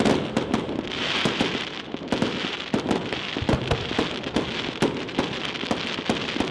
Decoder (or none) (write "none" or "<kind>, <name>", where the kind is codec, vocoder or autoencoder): none